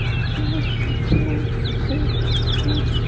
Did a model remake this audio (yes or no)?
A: no